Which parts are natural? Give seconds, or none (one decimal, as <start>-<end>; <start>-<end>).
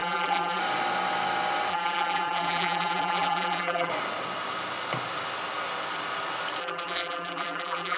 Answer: 0.6-1.7; 3.9-6.6